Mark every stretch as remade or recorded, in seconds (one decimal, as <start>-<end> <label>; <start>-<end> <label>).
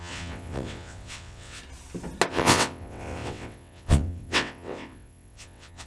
0.0-1.6 remade; 1.6-2.3 recorded; 2.3-5.9 remade